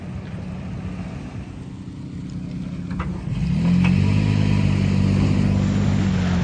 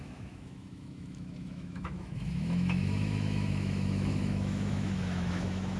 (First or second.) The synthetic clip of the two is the second